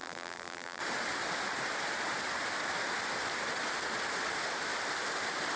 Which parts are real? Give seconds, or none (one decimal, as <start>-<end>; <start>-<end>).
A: 0.8-5.6